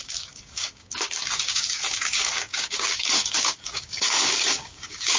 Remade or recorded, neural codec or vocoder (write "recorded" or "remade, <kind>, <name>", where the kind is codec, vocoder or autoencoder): remade, codec, DAC